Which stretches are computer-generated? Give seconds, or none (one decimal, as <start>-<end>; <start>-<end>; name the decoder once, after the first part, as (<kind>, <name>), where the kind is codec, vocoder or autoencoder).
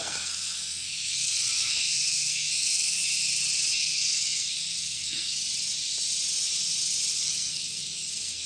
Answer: 0.0-3.0 (codec, SNAC); 3.8-5.4; 7.1-8.5